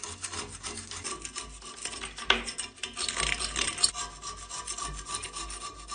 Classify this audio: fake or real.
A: real